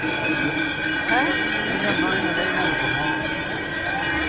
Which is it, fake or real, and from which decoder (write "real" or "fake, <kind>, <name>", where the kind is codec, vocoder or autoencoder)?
real